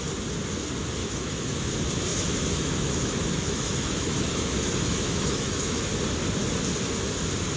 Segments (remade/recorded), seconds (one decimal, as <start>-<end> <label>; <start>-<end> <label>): 0.0-1.0 recorded; 1.0-1.7 remade; 1.7-2.1 recorded; 2.1-5.9 remade; 5.9-7.6 recorded